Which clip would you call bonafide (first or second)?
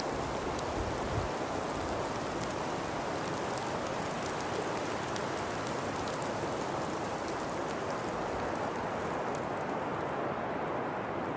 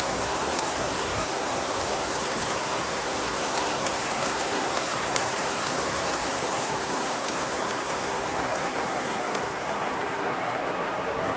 first